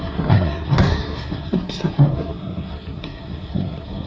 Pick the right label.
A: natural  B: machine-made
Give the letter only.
B